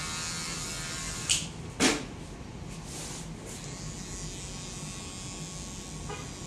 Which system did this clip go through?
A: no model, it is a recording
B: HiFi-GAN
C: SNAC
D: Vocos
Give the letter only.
A